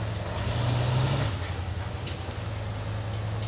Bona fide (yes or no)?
yes